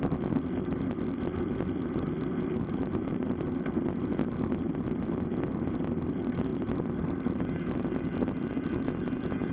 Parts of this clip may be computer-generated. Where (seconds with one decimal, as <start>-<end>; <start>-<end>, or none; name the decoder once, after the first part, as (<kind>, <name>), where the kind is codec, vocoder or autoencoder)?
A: none